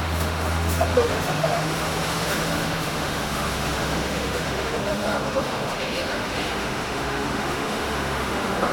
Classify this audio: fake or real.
fake